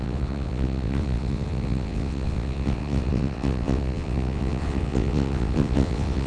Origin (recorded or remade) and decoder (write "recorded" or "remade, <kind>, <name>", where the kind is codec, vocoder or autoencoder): remade, vocoder, WaveNeXt